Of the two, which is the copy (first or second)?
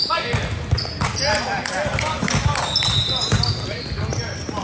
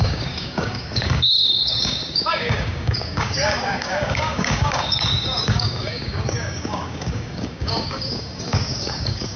second